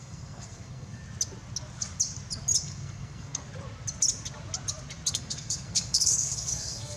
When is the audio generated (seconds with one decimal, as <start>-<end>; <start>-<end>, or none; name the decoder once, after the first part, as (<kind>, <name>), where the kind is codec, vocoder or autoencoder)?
0.0-1.0 (codec, SNAC); 2.6-3.4; 5.1-7.0